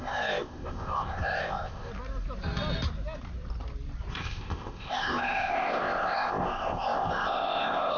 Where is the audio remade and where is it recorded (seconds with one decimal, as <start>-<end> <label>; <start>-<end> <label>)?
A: 0.0-1.9 remade; 1.9-4.1 recorded; 4.1-8.0 remade